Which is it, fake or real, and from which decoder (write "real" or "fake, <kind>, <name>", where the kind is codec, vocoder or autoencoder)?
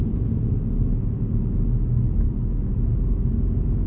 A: real